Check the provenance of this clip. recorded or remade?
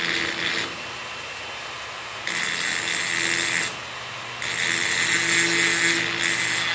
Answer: recorded